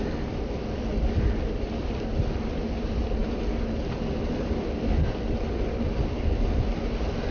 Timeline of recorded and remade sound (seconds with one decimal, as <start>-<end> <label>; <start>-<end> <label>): 0.0-7.3 recorded